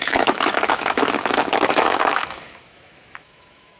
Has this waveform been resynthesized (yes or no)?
yes